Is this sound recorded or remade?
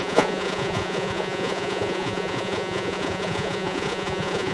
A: remade